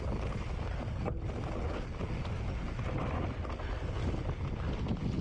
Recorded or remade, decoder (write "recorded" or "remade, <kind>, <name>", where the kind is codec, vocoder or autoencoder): recorded